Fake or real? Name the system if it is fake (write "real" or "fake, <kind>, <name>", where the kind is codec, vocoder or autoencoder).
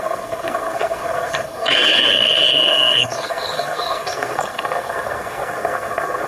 fake, codec, SNAC